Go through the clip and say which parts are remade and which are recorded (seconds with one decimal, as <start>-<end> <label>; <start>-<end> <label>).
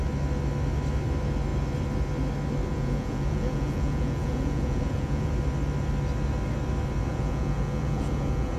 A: 0.0-2.7 recorded; 2.7-5.3 remade; 5.3-7.1 recorded; 7.1-8.6 remade